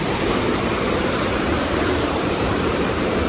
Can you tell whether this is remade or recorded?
remade